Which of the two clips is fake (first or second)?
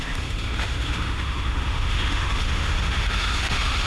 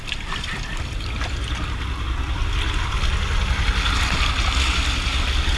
first